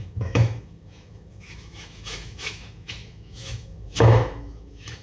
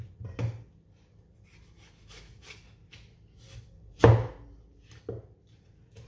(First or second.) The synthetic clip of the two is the first